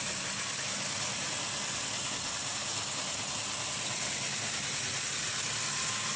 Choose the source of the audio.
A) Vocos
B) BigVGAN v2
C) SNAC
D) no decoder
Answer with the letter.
D